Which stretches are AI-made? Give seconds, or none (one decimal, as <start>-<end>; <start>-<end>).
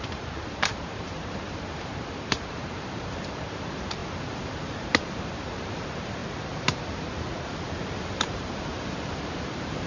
0.0-6.2; 8.0-9.9